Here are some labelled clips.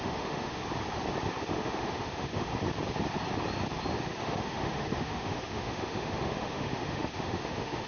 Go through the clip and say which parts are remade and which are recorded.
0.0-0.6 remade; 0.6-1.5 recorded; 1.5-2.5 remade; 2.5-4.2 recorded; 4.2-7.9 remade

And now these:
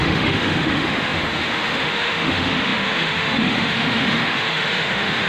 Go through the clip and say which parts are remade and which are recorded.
0.0-5.3 remade

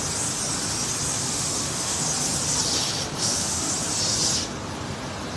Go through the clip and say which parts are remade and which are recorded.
0.0-1.2 recorded; 1.2-2.0 remade; 2.0-3.2 recorded; 3.2-3.7 remade; 3.7-5.4 recorded

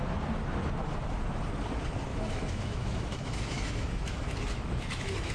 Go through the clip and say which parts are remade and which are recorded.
0.0-2.1 recorded; 2.1-5.3 remade

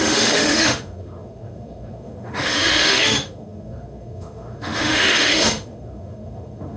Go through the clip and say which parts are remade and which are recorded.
0.0-6.8 remade

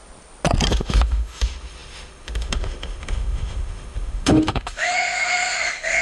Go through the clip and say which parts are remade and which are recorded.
0.0-0.7 recorded; 0.7-6.0 remade